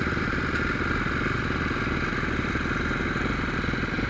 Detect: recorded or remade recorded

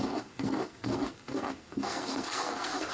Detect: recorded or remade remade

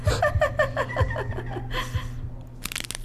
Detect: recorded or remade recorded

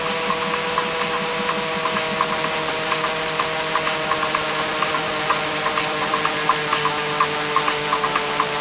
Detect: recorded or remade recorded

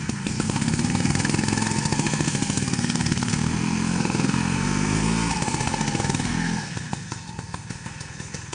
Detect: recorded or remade remade